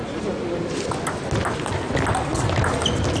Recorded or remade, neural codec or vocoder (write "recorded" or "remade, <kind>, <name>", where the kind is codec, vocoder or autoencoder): recorded